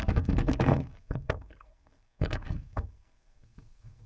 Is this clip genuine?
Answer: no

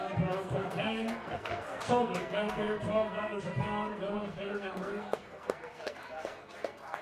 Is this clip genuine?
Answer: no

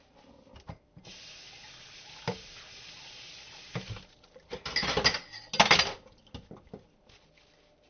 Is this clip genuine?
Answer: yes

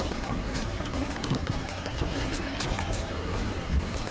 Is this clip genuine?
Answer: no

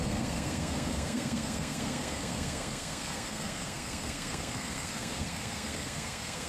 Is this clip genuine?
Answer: no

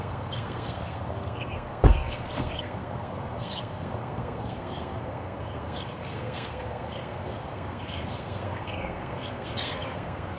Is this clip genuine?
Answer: no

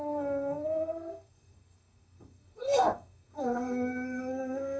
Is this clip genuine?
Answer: no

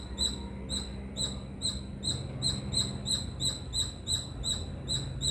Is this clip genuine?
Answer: yes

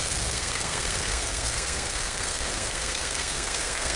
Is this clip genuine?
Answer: no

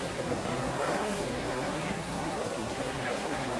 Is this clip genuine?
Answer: no